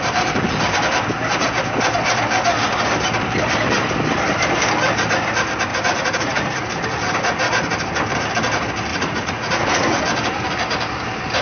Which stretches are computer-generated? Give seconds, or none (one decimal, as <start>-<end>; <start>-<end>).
5.7-6.7; 8.9-10.0